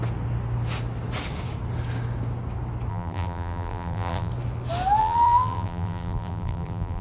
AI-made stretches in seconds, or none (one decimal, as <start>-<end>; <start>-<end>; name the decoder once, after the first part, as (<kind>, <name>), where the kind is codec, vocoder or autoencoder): 2.9-4.3 (vocoder, BigVGAN v2); 5.0-7.0